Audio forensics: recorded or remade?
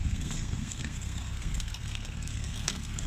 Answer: remade